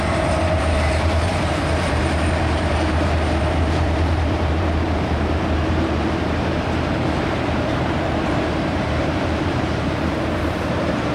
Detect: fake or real fake